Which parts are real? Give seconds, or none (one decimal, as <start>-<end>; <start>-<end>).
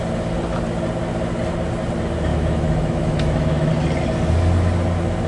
0.0-2.3; 3.7-5.3